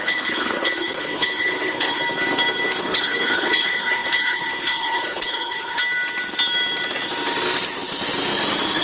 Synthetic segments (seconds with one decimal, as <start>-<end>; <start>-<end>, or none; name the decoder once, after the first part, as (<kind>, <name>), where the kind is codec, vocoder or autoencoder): 0.0-2.0 (codec, HILCodec); 2.8-5.8